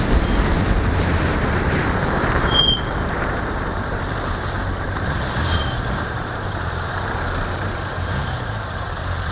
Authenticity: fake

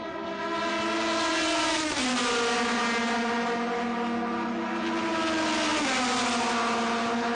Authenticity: real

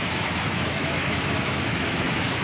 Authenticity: fake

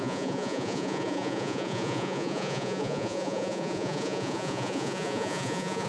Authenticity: fake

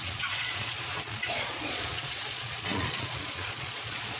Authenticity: fake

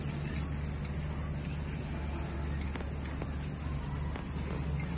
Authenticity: real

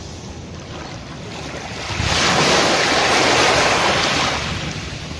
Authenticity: real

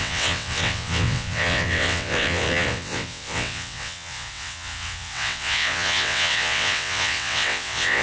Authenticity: fake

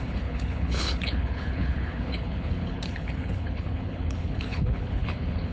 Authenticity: fake